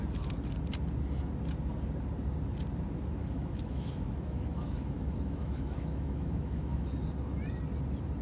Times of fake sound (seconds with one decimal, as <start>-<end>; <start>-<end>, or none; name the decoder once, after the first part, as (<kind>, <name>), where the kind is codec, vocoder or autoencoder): 3.2-6.9 (autoencoder, DAC-VAE)